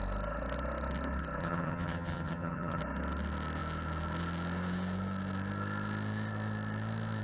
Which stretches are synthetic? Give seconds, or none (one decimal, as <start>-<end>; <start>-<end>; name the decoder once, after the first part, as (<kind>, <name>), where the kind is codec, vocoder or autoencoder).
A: 1.4-2.8 (vocoder, HiFi-GAN)